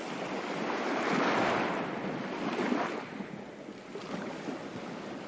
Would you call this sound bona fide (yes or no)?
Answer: yes